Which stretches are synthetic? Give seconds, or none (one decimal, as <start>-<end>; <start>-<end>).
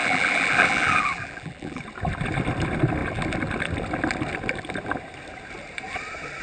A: 0.0-1.8